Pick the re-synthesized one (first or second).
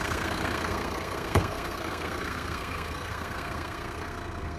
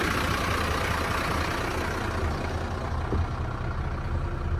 first